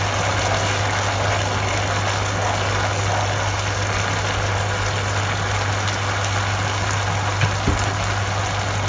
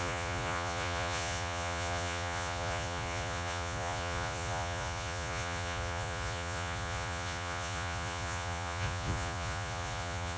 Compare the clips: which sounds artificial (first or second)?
second